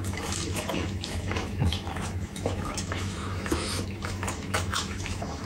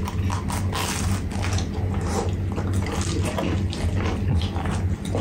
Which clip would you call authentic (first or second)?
second